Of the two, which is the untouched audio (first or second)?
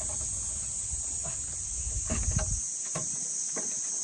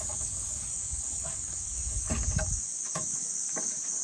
first